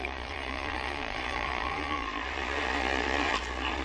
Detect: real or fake fake